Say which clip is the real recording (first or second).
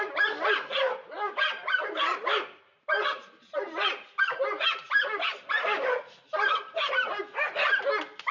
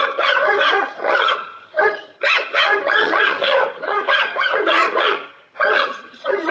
first